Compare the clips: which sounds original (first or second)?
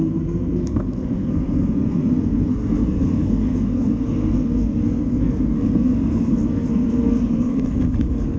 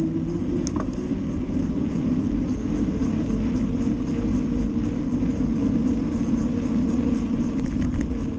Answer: second